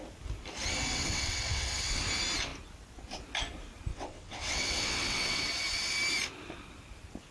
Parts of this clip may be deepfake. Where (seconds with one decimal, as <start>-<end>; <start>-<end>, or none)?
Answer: 0.9-2.0; 3.9-5.4